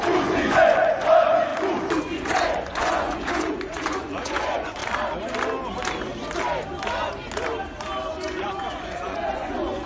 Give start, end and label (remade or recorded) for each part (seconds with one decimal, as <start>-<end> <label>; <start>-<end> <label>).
0.0-1.5 remade; 1.5-2.0 recorded; 2.0-4.8 remade; 4.8-8.1 recorded; 8.1-9.9 remade